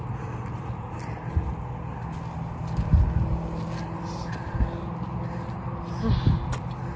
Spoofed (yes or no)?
no